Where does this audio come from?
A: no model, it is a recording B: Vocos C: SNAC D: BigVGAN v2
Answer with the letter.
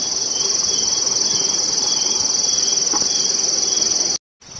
A